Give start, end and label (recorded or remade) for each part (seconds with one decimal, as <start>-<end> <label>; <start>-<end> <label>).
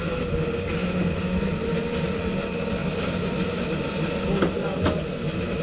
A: 0.0-5.6 recorded